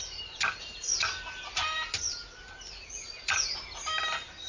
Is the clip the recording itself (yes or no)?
yes